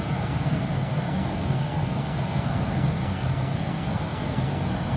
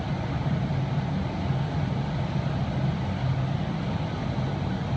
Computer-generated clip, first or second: first